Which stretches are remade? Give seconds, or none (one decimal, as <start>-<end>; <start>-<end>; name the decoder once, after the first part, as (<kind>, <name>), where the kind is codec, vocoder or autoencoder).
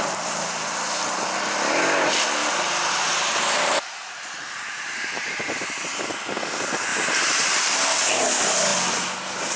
2.4-6.0 (vocoder, BigVGAN v2); 6.9-8.2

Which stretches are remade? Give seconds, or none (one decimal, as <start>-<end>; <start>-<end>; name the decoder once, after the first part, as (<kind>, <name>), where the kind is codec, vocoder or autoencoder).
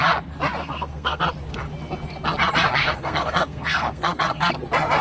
0.6-1.2 (codec, SNAC); 2.8-4.5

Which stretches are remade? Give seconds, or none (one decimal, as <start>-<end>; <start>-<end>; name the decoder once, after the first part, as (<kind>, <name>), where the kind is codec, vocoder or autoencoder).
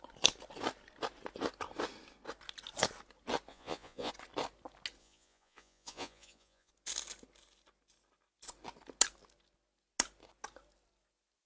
3.5-4.1 (vocoder, Vocos); 5.0-6.7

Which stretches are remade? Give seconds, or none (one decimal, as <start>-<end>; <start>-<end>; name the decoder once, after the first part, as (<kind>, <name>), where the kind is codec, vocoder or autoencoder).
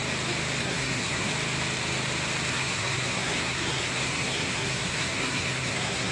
0.6-1.3 (codec, SNAC); 2.5-6.1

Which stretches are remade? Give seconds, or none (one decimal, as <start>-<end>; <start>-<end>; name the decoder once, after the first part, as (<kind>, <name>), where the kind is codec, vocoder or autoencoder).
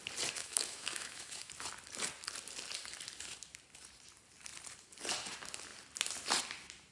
0.4-1.5 (autoencoder, DAC-VAE)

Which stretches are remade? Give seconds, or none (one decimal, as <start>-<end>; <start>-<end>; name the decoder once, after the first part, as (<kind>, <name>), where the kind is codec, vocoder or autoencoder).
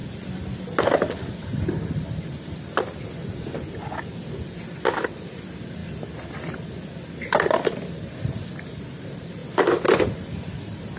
none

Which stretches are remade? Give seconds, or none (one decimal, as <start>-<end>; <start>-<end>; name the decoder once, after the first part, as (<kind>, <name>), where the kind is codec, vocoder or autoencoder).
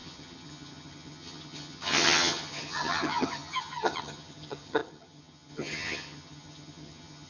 0.0-7.3 (vocoder, HiFi-GAN)